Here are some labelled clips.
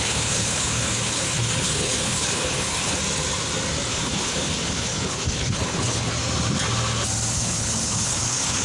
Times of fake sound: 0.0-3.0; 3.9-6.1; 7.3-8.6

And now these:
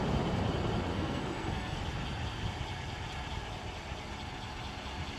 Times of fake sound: 0.9-1.8

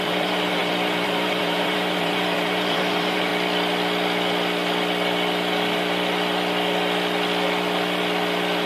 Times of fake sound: 0.0-3.3

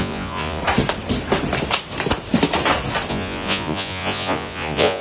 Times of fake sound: 0.0-0.6; 3.1-5.0

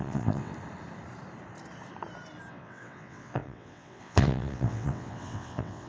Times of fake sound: 0.0-0.5; 2.5-5.9